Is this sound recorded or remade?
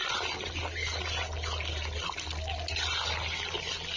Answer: recorded